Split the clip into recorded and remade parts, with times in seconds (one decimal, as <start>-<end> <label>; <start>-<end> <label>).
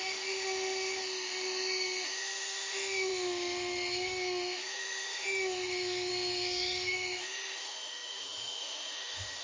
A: 0.0-9.4 remade